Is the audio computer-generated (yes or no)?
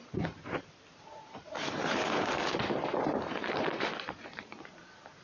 yes